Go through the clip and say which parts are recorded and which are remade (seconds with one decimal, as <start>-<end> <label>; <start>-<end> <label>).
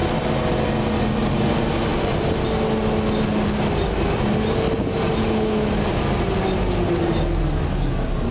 0.0-5.2 recorded; 5.2-5.7 remade; 5.7-8.3 recorded